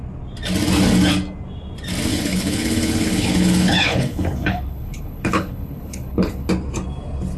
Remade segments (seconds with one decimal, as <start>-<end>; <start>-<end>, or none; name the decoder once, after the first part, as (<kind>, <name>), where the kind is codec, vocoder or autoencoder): 2.1-6.5 (codec, HILCodec)